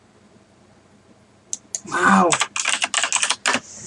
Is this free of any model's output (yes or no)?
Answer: yes